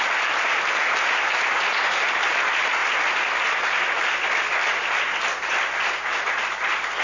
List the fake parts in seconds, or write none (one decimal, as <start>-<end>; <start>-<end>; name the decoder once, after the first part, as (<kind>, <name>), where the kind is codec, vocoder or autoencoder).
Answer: none